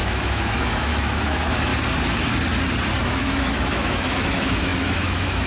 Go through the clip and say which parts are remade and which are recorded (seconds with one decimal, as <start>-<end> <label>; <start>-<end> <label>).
0.0-1.7 remade; 1.7-3.0 recorded; 3.0-5.5 remade

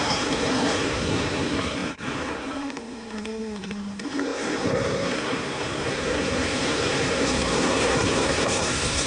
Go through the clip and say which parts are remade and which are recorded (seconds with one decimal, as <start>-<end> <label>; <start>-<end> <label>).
0.0-9.1 remade